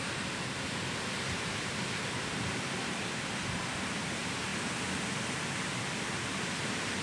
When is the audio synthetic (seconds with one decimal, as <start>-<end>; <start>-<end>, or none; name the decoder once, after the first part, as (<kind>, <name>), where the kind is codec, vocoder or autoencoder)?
0.0-4.5 (vocoder, BigVGAN v2); 5.7-7.0